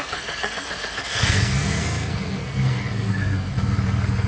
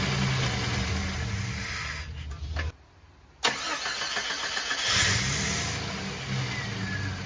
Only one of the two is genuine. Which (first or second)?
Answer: second